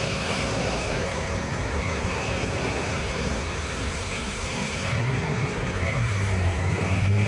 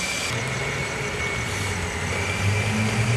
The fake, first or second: first